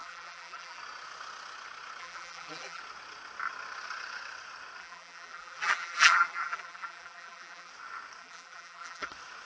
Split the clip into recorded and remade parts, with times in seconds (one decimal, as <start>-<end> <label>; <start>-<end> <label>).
0.0-0.8 remade; 0.8-2.0 recorded; 2.0-2.8 remade; 2.8-4.8 recorded; 4.8-7.7 remade; 7.7-8.2 recorded; 8.2-9.1 remade; 9.1-9.5 recorded